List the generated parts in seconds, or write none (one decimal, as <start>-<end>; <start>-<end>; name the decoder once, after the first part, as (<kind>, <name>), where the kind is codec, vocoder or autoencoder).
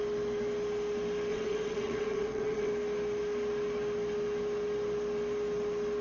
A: 1.3-2.7 (vocoder, WaveNeXt)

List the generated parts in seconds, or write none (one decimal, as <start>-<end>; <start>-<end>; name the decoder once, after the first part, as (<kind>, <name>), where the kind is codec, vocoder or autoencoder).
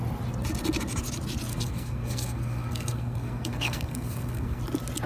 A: 1.5-4.6 (codec, SNAC)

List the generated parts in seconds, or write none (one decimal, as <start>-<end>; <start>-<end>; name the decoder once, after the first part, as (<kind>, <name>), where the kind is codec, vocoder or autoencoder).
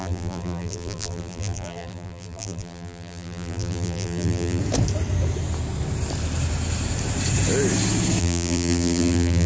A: 0.0-4.6 (vocoder, BigVGAN v2); 8.2-9.5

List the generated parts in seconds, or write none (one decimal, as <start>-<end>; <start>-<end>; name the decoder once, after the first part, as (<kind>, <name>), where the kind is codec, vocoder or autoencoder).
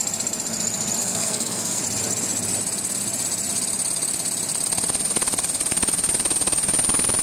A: 1.0-1.8 (codec, SNAC)